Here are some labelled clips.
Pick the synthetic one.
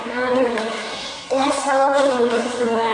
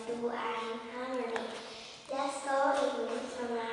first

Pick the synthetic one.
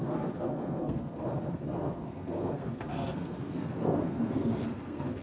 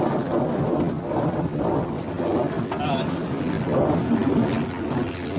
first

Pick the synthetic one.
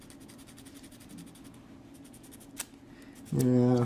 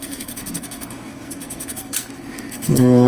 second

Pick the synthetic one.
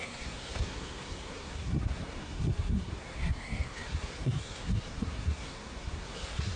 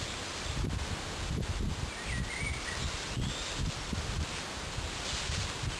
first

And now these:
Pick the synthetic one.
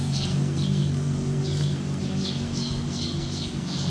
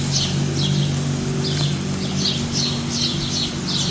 first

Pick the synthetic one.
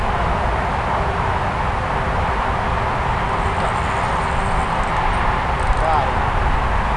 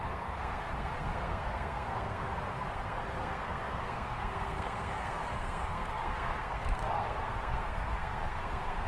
second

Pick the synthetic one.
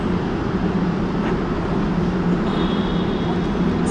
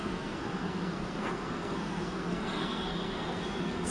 second